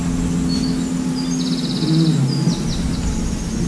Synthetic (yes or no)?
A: no